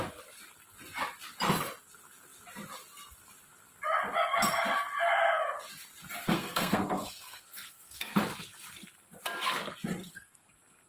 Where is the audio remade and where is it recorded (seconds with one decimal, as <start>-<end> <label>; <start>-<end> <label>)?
0.0-6.2 recorded; 6.2-8.1 remade; 8.1-10.0 recorded; 10.0-10.5 remade; 10.5-10.9 recorded